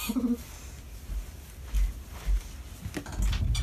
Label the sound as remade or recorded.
recorded